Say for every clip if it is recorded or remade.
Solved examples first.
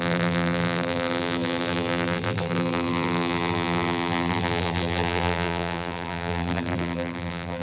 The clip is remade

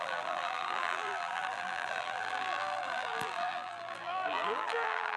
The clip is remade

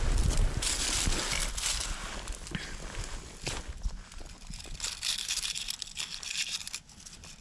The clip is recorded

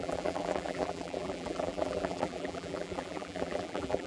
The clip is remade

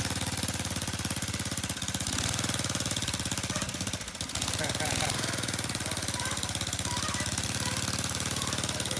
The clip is remade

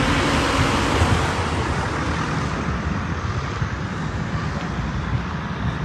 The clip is recorded